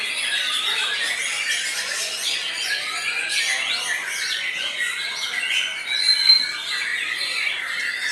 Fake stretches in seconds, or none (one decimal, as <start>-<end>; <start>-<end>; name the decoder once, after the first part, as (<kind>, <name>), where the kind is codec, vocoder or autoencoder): 1.7-3.4 (vocoder, Vocos); 4.0-6.3; 6.9-7.6